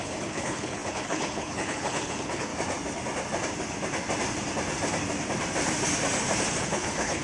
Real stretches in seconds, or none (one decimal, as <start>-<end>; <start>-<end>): 2.5-6.6